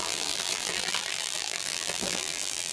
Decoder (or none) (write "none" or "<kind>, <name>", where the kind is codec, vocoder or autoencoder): vocoder, BigVGAN v2